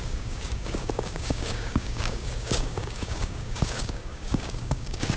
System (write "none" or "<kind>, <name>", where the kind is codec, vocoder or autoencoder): codec, DAC